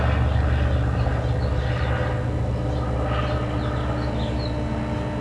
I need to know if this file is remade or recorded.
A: recorded